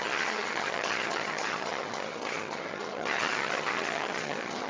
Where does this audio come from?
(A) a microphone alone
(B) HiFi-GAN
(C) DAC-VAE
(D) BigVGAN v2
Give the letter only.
B